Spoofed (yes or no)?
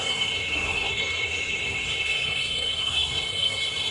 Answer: yes